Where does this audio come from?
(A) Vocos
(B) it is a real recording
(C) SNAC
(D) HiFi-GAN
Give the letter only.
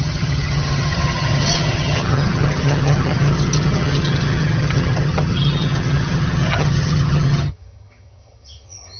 D